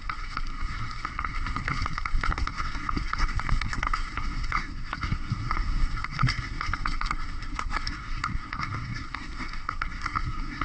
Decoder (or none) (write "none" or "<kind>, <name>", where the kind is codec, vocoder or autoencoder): codec, SNAC